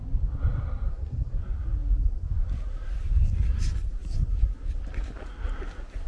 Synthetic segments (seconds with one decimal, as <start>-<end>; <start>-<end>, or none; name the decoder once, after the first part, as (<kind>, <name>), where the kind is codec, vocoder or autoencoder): 0.9-1.4 (codec, SNAC)